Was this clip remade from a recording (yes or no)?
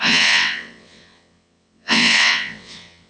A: yes